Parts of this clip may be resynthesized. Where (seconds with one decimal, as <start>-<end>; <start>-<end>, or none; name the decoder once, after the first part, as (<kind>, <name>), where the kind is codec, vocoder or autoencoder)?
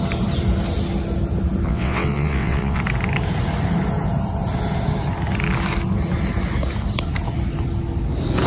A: 1.7-2.8 (vocoder, WaveNeXt)